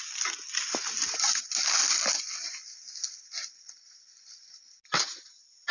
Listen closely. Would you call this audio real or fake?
real